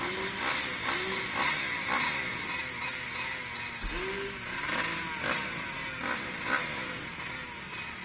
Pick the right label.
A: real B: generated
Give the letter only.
A